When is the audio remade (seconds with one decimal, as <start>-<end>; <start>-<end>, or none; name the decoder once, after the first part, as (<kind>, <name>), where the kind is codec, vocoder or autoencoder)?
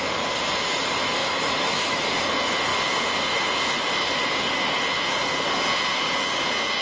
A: 1.2-2.0 (autoencoder, DAC-VAE)